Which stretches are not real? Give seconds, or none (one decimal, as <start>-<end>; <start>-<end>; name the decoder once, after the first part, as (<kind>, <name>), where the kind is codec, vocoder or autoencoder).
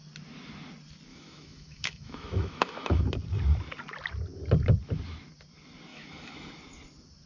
1.1-3.0 (autoencoder, DAC-VAE); 5.9-6.6